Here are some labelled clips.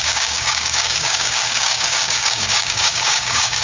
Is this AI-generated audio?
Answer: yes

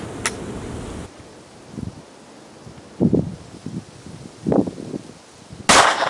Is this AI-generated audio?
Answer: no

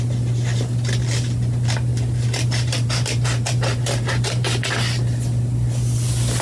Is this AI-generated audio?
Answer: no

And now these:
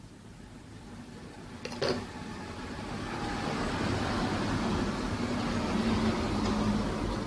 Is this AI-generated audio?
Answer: no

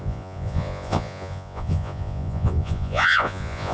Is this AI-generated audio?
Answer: yes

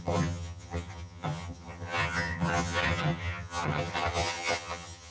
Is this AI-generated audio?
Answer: yes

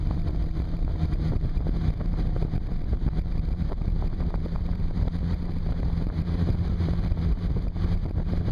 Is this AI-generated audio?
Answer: yes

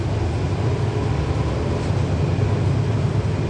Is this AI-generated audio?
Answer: no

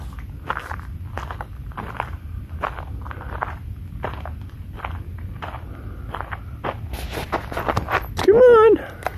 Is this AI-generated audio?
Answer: no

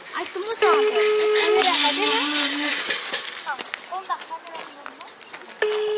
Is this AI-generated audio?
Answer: no